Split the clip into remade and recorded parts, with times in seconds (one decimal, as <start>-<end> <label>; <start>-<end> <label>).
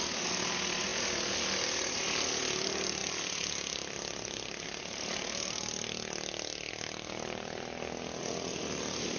0.0-9.2 recorded